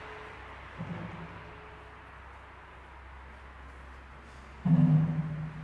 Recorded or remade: recorded